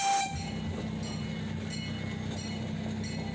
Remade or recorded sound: recorded